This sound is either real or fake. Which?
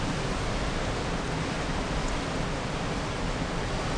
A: real